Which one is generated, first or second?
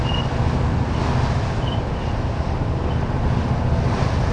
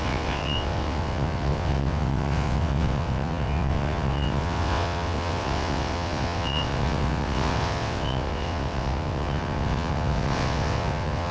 second